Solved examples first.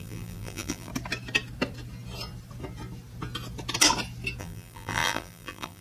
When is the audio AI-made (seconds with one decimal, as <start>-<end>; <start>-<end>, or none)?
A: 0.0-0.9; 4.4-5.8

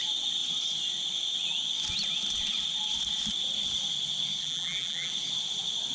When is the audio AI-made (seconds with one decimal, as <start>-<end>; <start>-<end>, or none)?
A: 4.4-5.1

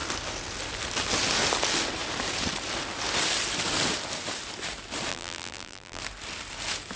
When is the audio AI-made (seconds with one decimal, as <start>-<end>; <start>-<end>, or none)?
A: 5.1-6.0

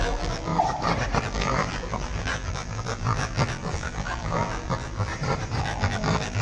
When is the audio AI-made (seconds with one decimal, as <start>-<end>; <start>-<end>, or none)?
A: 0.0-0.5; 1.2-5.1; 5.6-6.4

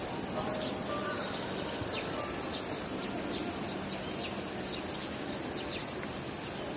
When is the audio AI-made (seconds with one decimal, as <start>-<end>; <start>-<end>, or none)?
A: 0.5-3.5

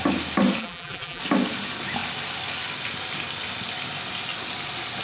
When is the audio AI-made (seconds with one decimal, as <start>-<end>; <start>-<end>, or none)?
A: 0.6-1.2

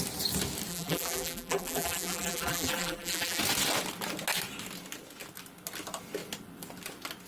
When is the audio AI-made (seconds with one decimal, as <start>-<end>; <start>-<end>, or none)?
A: 0.7-3.4